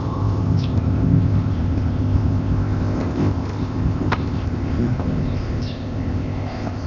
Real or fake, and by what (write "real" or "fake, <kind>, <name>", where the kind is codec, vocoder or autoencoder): fake, codec, ZipCodec